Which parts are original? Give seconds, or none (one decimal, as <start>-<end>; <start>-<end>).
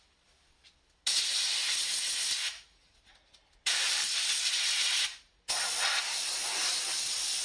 0.0-1.6; 6.0-7.4